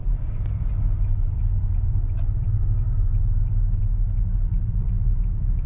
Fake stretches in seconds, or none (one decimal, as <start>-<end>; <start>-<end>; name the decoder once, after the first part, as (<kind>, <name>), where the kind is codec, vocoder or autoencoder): 0.0-3.4 (vocoder, BigVGAN v2); 4.5-5.7